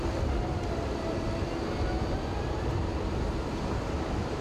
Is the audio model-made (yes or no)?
no